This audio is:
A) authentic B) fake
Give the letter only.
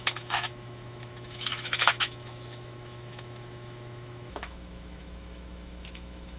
B